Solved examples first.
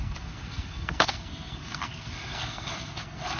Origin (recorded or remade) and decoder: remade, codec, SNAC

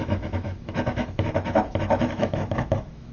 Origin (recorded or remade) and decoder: remade, autoencoder, DAC-VAE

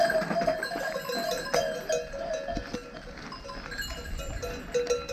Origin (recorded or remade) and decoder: recorded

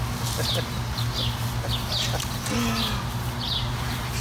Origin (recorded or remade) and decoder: recorded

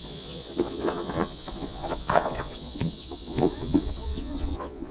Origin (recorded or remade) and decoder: remade, vocoder, Vocos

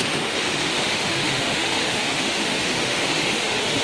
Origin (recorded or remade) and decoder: remade, autoencoder, DAC-VAE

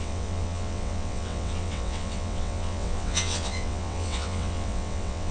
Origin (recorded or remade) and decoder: remade, vocoder, WaveNeXt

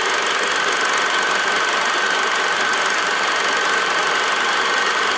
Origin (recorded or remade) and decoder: recorded